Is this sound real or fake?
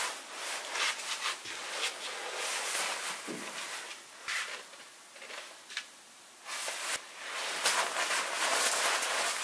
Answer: real